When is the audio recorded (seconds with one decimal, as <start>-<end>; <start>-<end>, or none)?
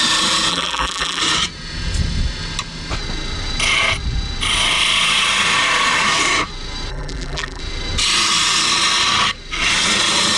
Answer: 0.0-0.5; 1.2-6.9; 7.6-10.4